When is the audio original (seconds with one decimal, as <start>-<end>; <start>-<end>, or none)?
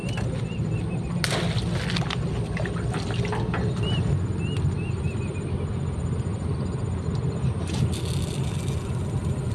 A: 0.0-5.2